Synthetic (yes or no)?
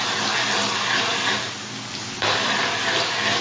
no